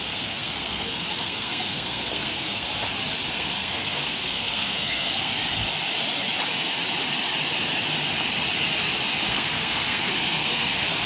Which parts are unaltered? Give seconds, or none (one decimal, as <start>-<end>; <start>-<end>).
2.7-3.3; 5.3-9.3

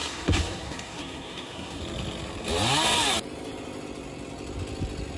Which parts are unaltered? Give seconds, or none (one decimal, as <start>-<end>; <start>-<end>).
1.8-5.2

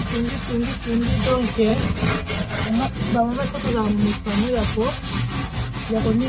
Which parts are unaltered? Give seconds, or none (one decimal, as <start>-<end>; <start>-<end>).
0.0-1.7; 2.7-6.3

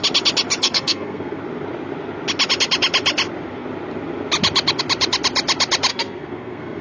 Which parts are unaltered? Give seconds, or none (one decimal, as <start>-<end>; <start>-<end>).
0.0-0.6; 1.4-5.9

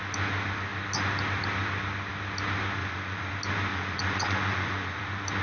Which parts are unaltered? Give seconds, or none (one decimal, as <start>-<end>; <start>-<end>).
0.0-2.8; 3.3-3.7; 5.0-5.4